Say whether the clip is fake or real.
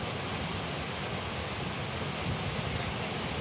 real